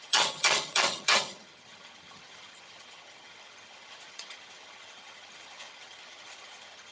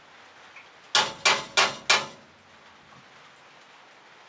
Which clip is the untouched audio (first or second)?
second